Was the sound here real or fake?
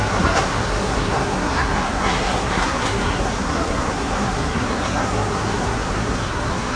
fake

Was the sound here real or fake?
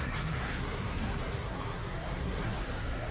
fake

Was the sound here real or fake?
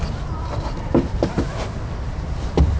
real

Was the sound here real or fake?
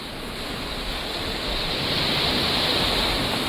real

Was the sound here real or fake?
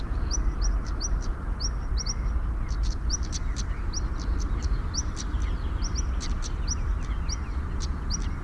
real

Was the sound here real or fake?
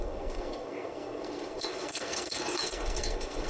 fake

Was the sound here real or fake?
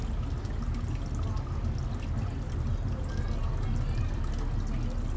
real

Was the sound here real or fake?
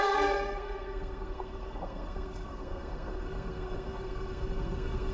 fake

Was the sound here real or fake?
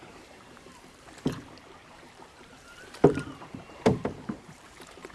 fake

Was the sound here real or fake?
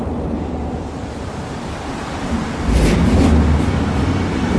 real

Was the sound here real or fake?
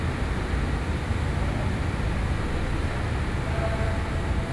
real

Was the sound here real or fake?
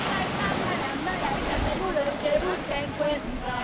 real